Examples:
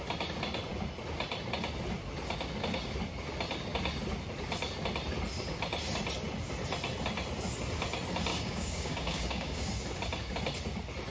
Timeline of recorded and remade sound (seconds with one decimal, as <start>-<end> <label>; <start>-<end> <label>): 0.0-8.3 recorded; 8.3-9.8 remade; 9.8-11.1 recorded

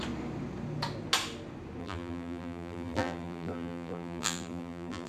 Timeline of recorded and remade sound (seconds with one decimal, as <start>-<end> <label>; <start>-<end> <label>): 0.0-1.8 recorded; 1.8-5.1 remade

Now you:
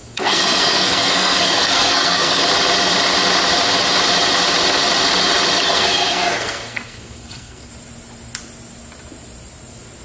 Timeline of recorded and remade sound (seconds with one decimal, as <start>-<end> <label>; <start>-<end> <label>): 0.0-2.4 remade; 2.4-5.7 recorded; 5.7-7.7 remade; 7.7-10.0 recorded

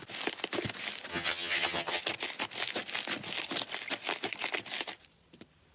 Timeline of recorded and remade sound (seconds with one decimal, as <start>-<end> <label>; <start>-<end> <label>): 0.0-1.1 recorded; 1.1-2.0 remade; 2.0-5.7 recorded